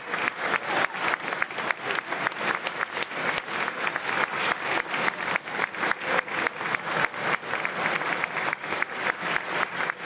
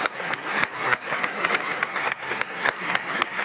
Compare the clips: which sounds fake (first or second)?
second